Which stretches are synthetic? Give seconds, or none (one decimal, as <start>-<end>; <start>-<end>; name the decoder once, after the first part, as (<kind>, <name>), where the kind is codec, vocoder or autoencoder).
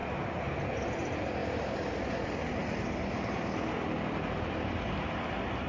none